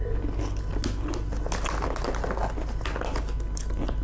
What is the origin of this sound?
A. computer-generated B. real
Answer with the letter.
B